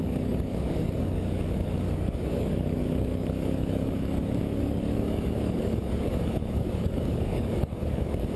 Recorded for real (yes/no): no